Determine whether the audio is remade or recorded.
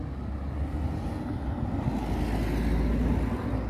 recorded